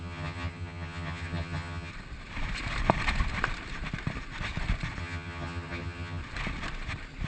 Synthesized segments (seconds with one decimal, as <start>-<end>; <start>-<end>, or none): 0.0-1.9; 5.0-6.2